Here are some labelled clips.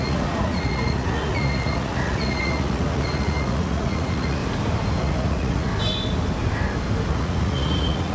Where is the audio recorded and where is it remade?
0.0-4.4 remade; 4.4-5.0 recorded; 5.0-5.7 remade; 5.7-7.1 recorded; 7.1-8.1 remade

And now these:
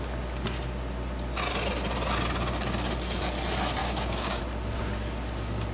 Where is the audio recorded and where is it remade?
0.0-3.8 recorded; 3.8-4.4 remade; 4.4-5.7 recorded

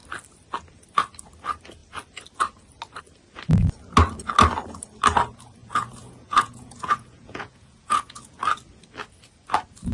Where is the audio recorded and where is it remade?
0.0-5.6 recorded; 5.6-8.4 remade; 8.4-9.9 recorded

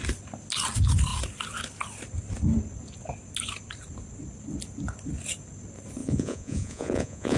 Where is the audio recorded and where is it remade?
0.0-6.0 recorded; 6.0-7.4 remade